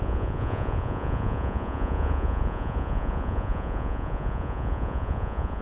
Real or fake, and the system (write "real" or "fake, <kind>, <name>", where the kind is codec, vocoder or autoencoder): fake, vocoder, Vocos